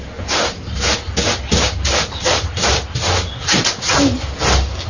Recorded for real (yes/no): yes